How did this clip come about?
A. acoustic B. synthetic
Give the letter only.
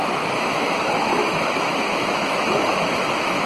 B